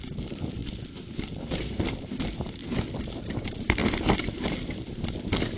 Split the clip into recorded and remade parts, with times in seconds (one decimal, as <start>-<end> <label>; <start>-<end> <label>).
0.0-2.6 remade; 2.6-3.1 recorded; 3.1-5.6 remade